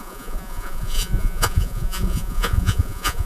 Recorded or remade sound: remade